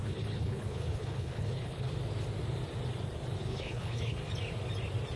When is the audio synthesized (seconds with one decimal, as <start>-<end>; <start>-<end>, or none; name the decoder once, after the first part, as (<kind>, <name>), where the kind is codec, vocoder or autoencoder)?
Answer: 0.0-1.9 (codec, HILCodec); 3.4-4.2